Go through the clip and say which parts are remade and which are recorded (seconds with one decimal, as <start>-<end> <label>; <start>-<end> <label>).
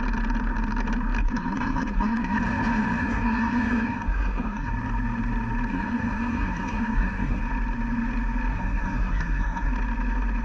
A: 0.0-1.2 recorded; 1.2-2.4 remade; 2.4-3.0 recorded; 3.0-4.7 remade; 4.7-5.7 recorded; 5.7-7.4 remade; 7.4-8.5 recorded; 8.5-9.7 remade; 9.7-10.4 recorded